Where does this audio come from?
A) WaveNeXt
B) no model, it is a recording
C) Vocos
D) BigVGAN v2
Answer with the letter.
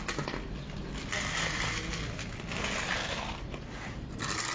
B